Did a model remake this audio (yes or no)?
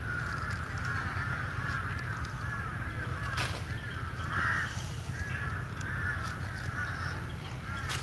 no